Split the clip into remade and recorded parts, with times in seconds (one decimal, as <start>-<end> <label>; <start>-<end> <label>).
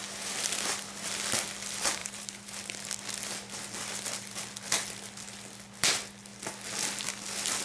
0.0-2.0 recorded; 2.0-2.6 remade; 2.6-7.6 recorded